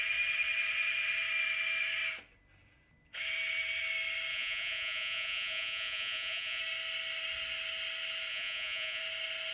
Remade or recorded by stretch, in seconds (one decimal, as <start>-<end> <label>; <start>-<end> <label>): 0.0-4.3 recorded; 4.3-6.6 remade; 6.6-8.3 recorded; 8.3-9.0 remade; 9.0-9.5 recorded